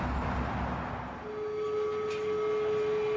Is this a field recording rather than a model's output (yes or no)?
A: yes